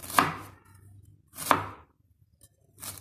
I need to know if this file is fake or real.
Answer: real